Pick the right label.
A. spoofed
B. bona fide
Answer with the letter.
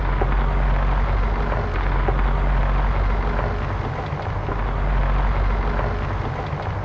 B